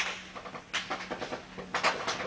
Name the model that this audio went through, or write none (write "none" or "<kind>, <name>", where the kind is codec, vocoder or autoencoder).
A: none